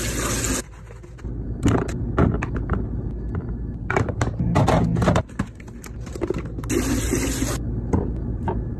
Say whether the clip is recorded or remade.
recorded